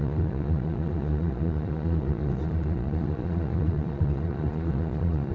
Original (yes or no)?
no